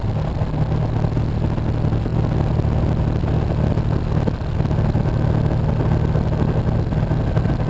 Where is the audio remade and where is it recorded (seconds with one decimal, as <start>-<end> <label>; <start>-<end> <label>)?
0.0-7.7 recorded